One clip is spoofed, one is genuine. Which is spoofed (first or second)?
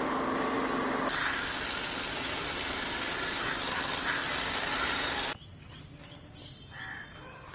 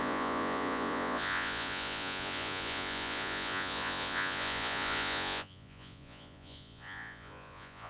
second